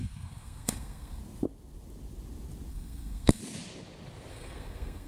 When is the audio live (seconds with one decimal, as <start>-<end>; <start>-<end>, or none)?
1.2-2.7; 3.4-4.3